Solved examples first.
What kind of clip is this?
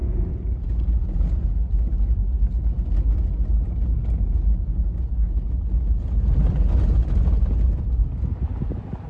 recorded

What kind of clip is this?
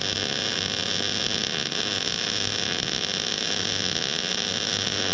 recorded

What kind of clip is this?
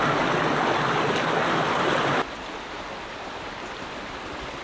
recorded